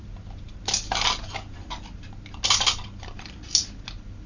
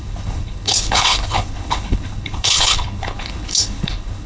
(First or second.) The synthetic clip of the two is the second